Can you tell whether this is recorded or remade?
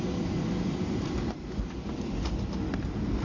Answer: recorded